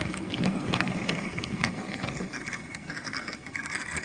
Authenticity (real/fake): fake